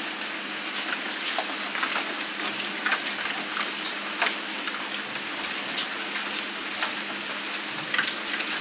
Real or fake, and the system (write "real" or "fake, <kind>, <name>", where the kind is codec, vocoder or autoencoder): real